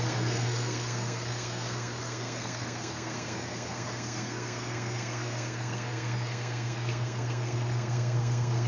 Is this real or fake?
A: fake